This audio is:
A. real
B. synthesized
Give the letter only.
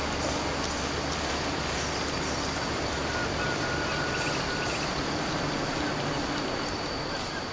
A